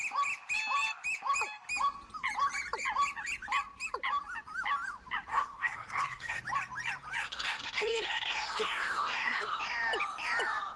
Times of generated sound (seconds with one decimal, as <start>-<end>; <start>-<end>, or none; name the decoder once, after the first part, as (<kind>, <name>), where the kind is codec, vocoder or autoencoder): 5.3-6.4 (codec, SNAC); 7.2-9.6